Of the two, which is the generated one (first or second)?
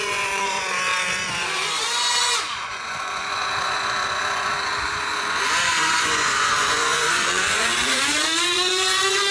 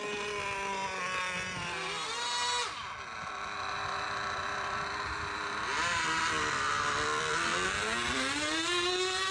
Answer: first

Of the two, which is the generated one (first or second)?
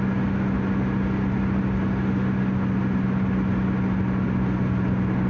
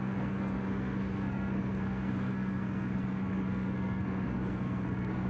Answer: second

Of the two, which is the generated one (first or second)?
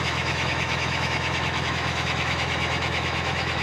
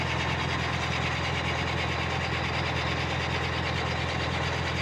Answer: first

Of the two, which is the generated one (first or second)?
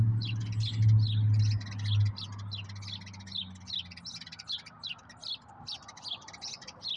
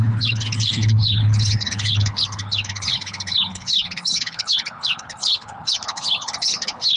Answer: second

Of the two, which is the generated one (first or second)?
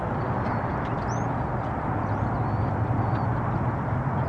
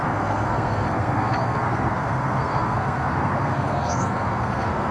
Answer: second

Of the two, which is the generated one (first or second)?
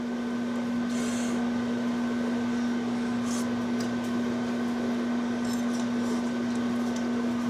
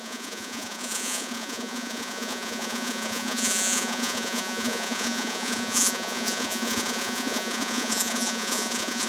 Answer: second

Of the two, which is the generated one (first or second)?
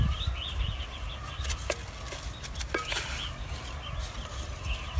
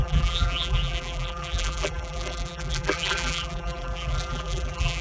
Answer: second